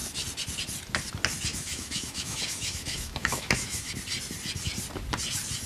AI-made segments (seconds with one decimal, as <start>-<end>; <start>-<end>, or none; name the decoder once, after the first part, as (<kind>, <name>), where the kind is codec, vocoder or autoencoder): 1.5-3.9 (autoencoder, DAC-VAE)